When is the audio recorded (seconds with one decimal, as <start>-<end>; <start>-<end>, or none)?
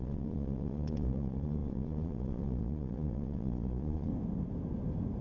4.1-5.2